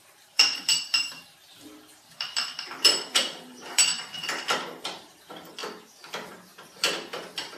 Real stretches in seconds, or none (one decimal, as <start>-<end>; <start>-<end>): 5.6-6.1